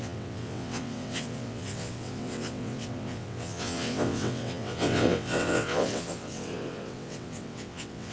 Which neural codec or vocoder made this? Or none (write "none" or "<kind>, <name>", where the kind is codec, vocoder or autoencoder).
vocoder, WaveNeXt